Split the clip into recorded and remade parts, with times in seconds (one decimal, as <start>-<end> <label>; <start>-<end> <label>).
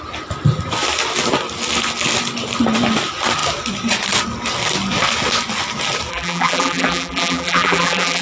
0.0-6.1 recorded; 6.1-8.2 remade